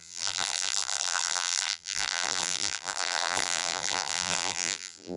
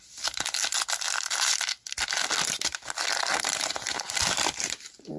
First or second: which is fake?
first